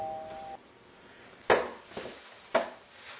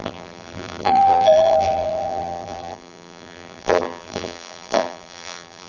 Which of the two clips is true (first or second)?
first